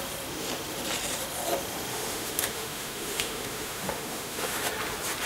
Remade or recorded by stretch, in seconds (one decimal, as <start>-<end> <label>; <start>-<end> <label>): 0.0-1.9 recorded; 1.9-4.7 remade; 4.7-5.3 recorded